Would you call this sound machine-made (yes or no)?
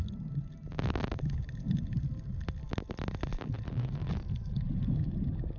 no